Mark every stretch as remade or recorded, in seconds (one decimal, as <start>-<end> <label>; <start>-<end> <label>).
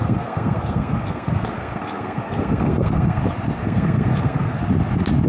0.0-3.2 remade; 3.2-3.6 recorded; 3.6-4.6 remade; 4.6-5.3 recorded